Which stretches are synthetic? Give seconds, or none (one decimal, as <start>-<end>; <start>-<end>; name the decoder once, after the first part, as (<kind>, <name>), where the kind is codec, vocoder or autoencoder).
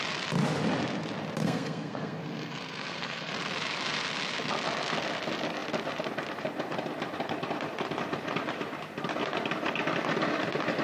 1.4-3.3 (codec, SNAC)